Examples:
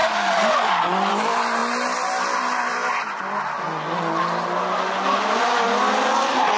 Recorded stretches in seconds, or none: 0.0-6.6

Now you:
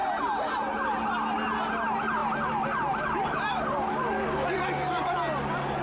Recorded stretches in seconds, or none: 0.0-5.8

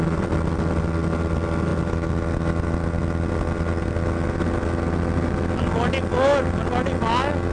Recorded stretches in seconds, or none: 0.0-7.5

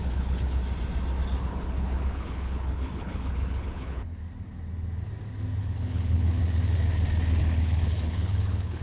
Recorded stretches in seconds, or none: 0.6-1.4; 4.2-5.6; 6.4-7.4

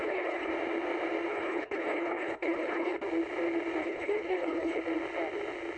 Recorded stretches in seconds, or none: 0.5-1.3; 3.0-3.8; 4.8-5.8

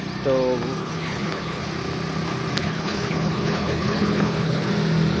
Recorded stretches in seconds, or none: 0.0-0.8; 1.6-2.6; 4.7-5.2

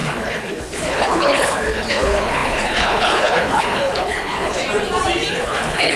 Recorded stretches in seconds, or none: 4.6-5.3